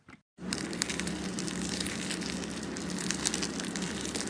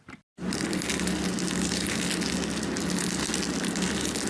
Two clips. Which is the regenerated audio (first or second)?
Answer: first